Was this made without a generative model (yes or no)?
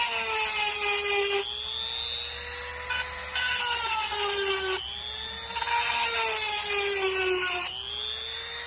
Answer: yes